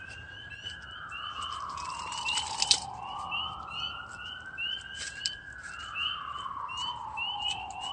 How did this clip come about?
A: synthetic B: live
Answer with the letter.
B